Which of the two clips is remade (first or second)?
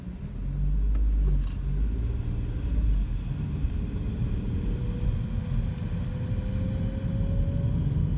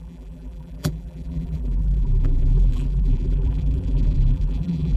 second